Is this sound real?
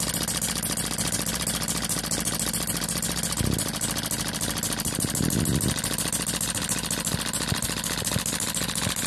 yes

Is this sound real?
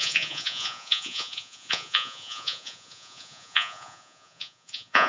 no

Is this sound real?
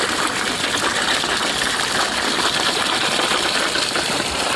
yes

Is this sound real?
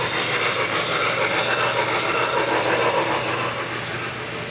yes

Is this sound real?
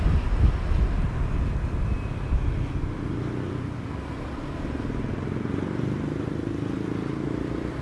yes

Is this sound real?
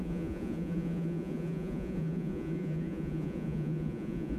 no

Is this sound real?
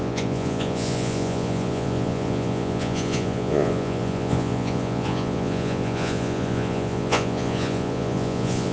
no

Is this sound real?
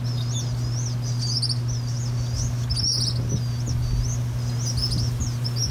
yes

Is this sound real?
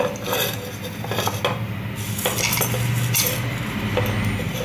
yes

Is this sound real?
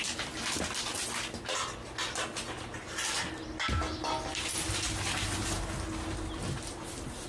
yes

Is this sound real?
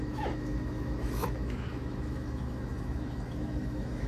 no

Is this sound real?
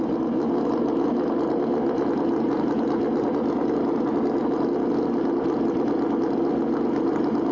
yes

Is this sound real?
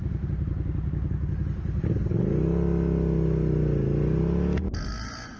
yes